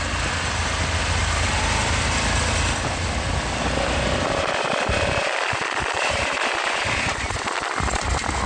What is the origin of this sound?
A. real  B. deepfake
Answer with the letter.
A